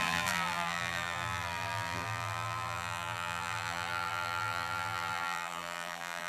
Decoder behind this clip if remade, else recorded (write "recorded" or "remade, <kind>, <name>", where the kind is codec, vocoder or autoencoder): remade, vocoder, BigVGAN v2